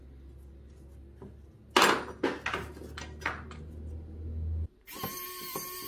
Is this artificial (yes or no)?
no